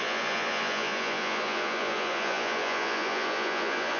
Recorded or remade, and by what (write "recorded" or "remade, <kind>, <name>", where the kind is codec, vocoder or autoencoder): remade, vocoder, Vocos